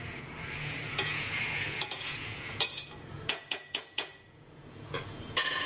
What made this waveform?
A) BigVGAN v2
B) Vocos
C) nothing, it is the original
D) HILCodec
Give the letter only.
B